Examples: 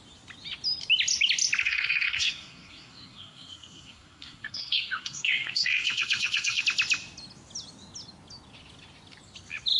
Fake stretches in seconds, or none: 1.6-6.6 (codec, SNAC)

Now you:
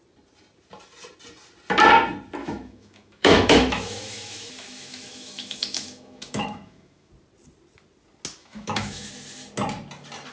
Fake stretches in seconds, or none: 2.4-7.1 (autoencoder, DAC-VAE); 8.4-9.1

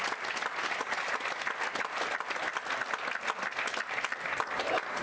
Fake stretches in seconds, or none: 0.6-1.1 (codec, DAC)

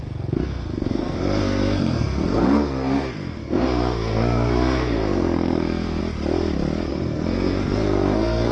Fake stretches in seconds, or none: 0.0-6.0 (codec, SNAC); 6.9-8.5

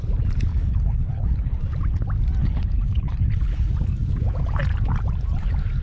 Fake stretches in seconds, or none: 0.5-1.6 (codec, HILCodec); 2.4-3.7

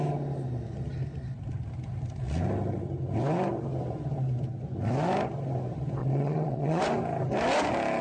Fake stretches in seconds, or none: 6.0-6.8 (vocoder, Vocos)

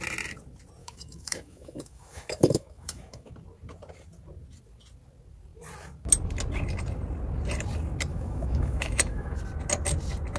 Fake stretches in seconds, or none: 0.8-3.3 (autoencoder, DAC-VAE); 8.1-9.4

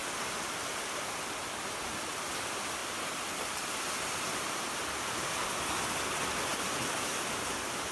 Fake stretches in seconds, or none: none